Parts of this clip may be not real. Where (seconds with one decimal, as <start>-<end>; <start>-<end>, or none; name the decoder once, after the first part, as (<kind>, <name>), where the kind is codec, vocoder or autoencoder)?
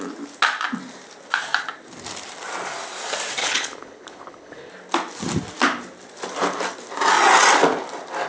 3.4-4.7 (codec, HILCodec)